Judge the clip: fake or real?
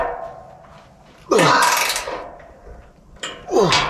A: real